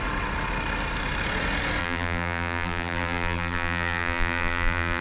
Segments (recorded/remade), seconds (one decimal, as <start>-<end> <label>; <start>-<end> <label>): 0.0-1.8 recorded; 1.8-5.0 remade